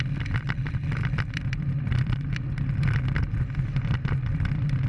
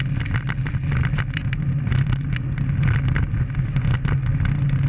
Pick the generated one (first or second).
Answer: first